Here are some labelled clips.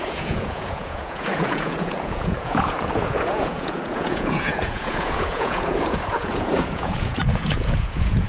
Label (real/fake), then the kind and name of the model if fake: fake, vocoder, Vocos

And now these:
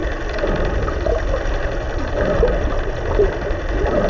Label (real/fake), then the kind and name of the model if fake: real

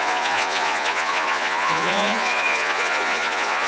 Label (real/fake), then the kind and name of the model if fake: fake, vocoder, Vocos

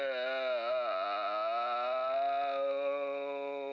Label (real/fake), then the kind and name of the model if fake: real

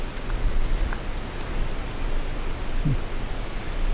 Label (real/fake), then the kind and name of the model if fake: real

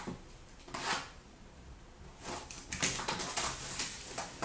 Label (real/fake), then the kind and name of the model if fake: real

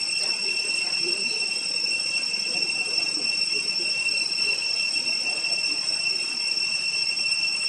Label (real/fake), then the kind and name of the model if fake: fake, vocoder, Vocos